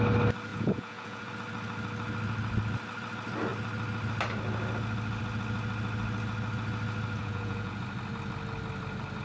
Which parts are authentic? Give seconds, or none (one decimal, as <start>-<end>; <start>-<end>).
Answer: 0.0-0.5; 1.3-7.2; 7.8-9.2